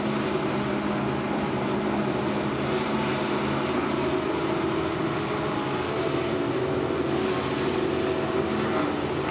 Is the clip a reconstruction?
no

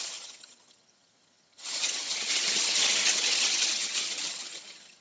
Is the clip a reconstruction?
yes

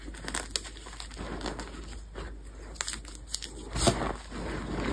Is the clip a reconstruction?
no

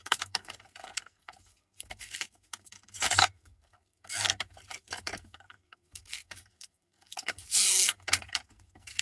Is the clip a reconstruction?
yes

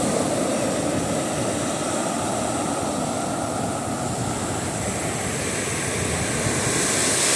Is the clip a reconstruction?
no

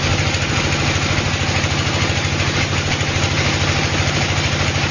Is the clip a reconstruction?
no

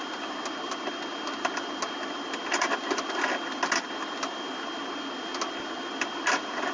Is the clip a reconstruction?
no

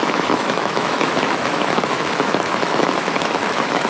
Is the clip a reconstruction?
yes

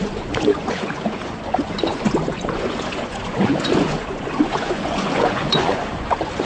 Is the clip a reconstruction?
yes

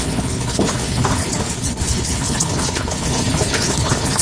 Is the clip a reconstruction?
yes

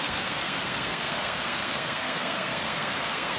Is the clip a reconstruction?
yes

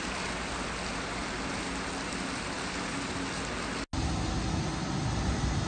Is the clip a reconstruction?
no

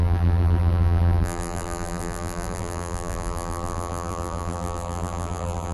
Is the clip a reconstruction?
yes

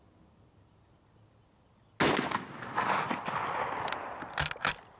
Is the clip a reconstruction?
no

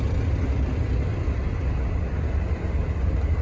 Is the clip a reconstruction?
no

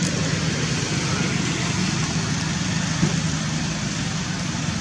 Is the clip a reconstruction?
no